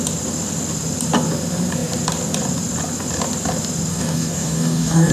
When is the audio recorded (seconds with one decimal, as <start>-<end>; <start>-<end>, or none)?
0.0-3.9